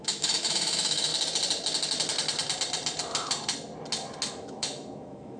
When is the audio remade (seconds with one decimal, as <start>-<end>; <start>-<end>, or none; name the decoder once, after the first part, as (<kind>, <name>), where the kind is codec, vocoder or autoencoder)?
0.0-1.1 (autoencoder, DAC-VAE); 4.3-5.4